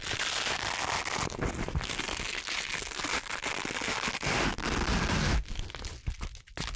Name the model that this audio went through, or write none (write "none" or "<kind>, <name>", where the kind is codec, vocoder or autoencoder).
none